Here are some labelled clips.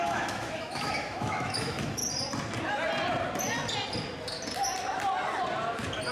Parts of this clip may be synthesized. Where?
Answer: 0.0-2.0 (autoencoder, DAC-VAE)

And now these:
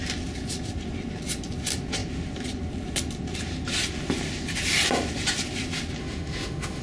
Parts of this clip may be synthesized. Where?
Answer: 6.0-6.8 (autoencoder, DAC-VAE)